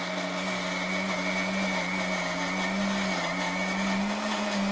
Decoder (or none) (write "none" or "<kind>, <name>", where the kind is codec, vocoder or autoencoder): none